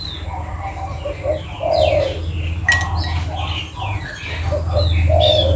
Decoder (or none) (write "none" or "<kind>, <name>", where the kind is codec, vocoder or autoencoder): none